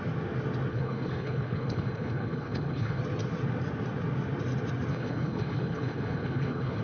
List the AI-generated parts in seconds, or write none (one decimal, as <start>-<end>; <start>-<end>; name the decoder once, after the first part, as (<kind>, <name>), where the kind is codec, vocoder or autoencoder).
0.7-3.0 (codec, HILCodec); 4.9-6.8